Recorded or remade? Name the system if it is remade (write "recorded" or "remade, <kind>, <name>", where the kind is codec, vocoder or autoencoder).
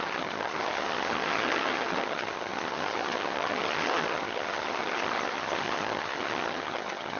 remade, vocoder, HiFi-GAN